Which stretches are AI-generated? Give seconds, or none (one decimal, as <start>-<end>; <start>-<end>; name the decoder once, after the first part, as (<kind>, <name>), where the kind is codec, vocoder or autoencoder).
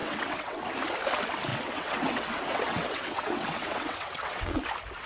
0.0-0.6 (vocoder, WaveNeXt); 1.5-4.6